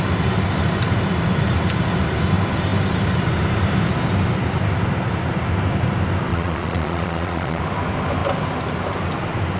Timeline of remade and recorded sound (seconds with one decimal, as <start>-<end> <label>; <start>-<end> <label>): 0.0-6.3 recorded; 6.3-7.6 remade; 7.6-9.6 recorded